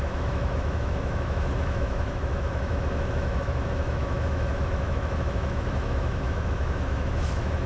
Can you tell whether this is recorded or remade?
remade